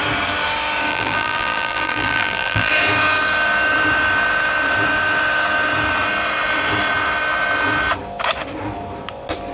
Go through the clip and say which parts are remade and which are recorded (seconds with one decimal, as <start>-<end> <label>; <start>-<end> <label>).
0.0-0.9 recorded; 0.9-2.7 remade; 2.7-9.5 recorded